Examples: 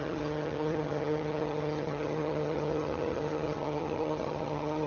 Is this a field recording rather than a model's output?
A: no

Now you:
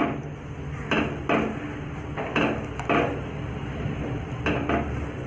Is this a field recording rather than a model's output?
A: yes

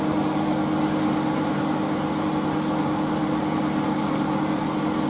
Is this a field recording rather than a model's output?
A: yes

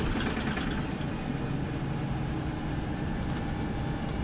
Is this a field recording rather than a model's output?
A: yes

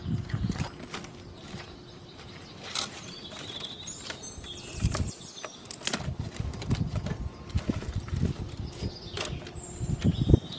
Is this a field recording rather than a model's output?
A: yes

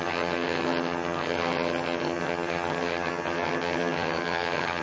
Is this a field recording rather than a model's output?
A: no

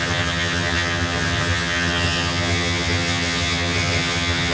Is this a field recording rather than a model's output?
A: no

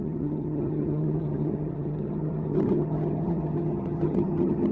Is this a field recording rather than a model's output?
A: no